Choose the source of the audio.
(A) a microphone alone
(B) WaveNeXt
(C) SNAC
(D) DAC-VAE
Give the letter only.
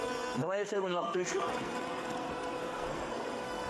C